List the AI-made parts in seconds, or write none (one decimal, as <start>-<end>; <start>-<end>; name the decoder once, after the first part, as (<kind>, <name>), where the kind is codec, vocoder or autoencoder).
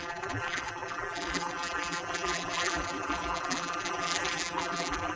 0.0-5.2 (vocoder, BigVGAN v2)